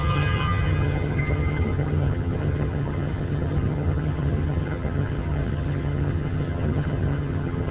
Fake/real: fake